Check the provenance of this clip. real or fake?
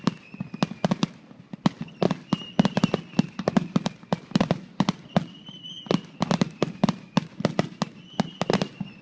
real